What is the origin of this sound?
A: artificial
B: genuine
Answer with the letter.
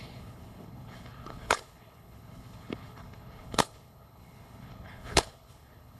A